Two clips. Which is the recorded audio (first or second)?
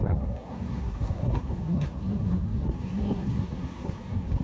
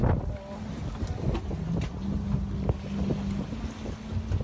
second